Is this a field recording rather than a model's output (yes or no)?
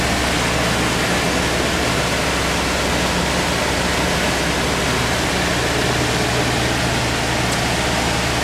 yes